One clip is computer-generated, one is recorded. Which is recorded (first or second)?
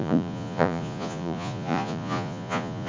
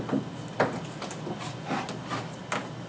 second